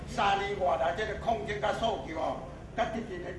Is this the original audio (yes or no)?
yes